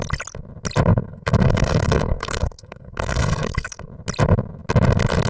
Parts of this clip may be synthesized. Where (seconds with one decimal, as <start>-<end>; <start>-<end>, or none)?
0.9-3.9